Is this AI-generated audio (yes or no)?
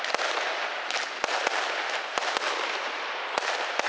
no